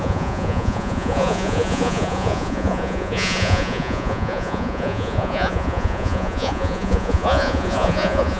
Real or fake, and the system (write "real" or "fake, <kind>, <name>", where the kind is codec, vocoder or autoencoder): fake, vocoder, Vocos